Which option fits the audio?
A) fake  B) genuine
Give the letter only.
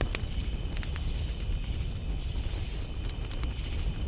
B